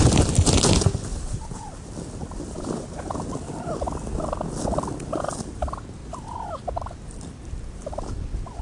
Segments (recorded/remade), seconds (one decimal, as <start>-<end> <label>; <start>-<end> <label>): 0.0-1.1 remade; 1.1-5.2 recorded; 5.2-6.0 remade; 6.0-6.6 recorded; 6.6-8.6 remade